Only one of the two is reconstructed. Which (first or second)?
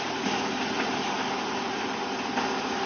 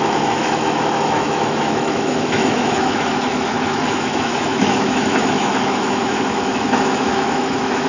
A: second